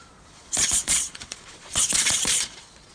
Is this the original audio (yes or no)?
no